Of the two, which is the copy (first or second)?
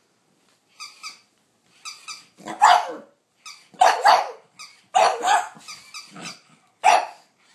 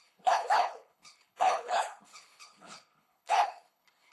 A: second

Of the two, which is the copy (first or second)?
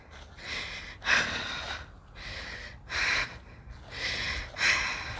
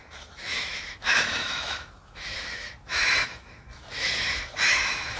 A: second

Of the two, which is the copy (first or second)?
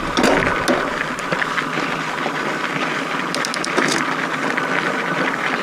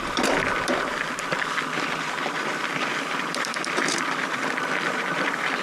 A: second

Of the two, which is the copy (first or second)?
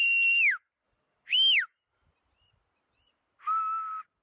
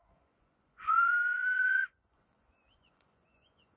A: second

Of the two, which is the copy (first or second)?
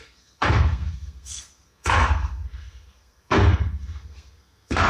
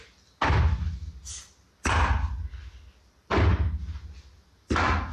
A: first